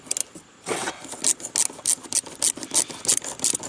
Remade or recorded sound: recorded